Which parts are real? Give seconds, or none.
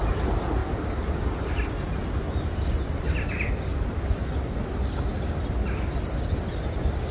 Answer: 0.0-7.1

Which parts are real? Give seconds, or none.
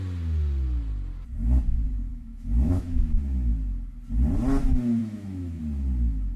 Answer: 0.0-2.1; 3.5-5.0; 5.6-6.4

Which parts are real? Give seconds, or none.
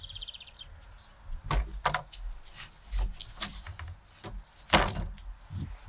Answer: 0.0-5.9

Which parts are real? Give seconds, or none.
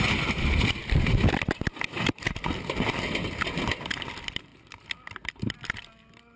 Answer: 0.0-6.4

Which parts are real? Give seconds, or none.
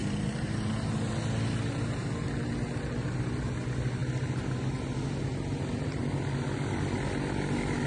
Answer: 1.1-7.9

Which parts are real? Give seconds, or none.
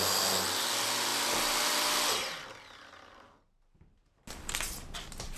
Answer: 0.0-5.4